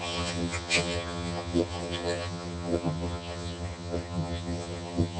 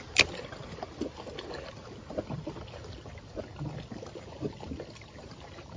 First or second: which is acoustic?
second